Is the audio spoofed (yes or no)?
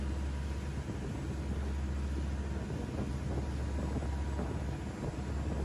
no